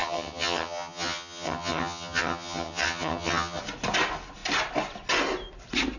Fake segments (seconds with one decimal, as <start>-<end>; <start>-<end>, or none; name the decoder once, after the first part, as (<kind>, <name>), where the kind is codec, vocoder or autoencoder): 0.0-3.6 (vocoder, HiFi-GAN)